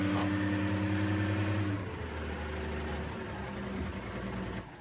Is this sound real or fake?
real